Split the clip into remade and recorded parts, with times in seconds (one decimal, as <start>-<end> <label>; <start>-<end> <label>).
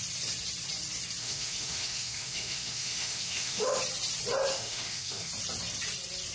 0.0-1.2 recorded; 1.2-3.8 remade; 3.8-4.5 recorded; 4.5-5.3 remade; 5.3-6.3 recorded